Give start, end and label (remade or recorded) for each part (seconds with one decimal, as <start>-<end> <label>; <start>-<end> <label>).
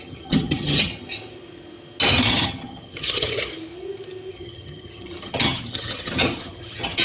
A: 0.0-0.9 remade; 0.9-2.3 recorded; 2.3-3.5 remade; 3.5-4.3 recorded; 4.3-7.0 remade